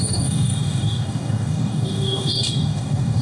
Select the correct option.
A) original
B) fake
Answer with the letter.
B